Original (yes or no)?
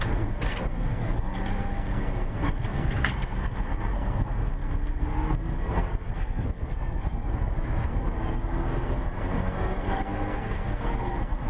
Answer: no